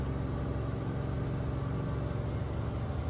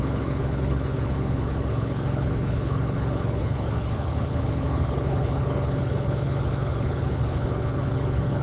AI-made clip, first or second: second